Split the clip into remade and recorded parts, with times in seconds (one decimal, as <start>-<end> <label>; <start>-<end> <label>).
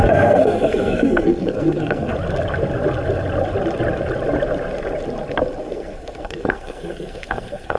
0.0-2.1 remade; 2.1-5.6 recorded; 5.6-7.8 remade